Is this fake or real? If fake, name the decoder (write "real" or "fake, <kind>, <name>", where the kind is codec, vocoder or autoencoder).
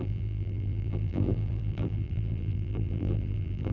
fake, vocoder, BigVGAN v2